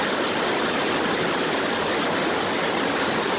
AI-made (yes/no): no